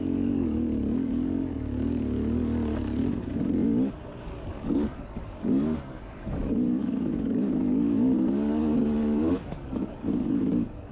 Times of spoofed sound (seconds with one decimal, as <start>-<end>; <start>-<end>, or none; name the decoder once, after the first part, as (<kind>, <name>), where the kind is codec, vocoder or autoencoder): 0.0-3.0 (codec, DAC); 4.2-10.9